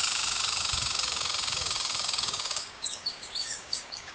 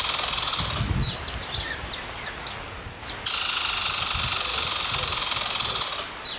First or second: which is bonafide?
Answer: second